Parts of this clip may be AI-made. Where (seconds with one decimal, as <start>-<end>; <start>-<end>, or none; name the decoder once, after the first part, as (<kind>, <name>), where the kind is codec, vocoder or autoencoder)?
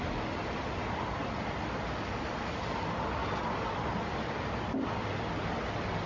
none